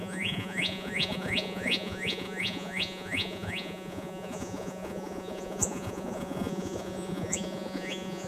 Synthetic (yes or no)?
yes